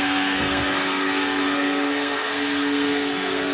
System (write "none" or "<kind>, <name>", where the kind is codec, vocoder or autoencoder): codec, SNAC